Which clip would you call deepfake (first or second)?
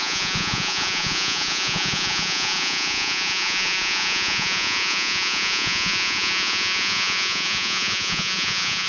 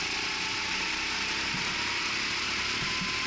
first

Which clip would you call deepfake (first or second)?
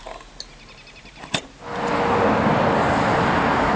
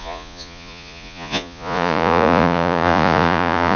second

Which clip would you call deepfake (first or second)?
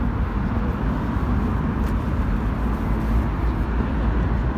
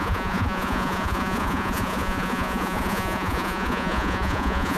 second